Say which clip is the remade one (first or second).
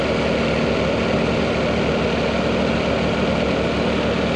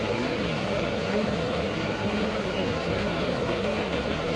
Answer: second